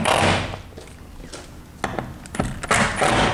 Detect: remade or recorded recorded